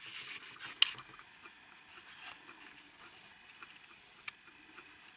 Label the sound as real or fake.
real